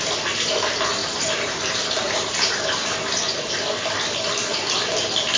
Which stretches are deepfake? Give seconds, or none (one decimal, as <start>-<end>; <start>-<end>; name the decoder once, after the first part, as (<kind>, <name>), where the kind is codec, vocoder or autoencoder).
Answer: 1.0-3.5 (vocoder, BigVGAN v2); 4.4-5.0